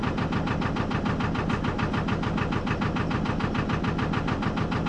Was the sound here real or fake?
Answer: real